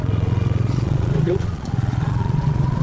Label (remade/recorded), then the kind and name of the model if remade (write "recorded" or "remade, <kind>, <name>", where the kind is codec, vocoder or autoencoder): remade, vocoder, Vocos